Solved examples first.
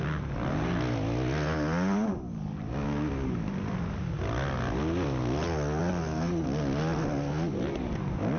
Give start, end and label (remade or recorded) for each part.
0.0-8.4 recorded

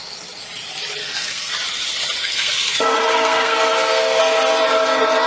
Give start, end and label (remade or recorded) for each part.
0.0-1.0 recorded; 1.0-1.5 remade; 1.5-2.2 recorded; 2.2-4.2 remade; 4.2-5.3 recorded

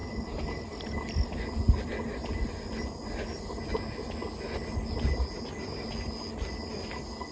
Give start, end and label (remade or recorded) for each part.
0.0-7.3 recorded

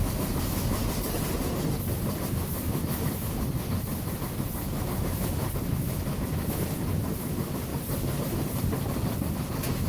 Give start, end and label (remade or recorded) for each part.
0.0-0.8 remade; 0.8-2.3 recorded; 2.3-7.7 remade; 7.7-9.3 recorded; 9.3-9.9 remade

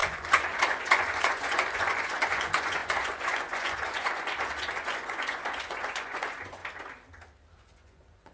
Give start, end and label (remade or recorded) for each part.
0.0-6.6 remade; 6.6-7.6 recorded; 7.6-8.3 remade